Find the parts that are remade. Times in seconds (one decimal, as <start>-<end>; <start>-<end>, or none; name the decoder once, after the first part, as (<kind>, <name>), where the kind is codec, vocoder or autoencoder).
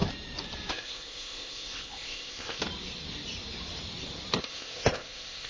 0.7-2.6 (codec, ZipCodec); 4.4-5.5